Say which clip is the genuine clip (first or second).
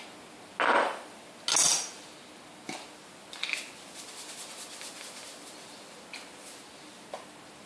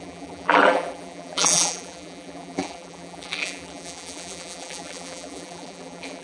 first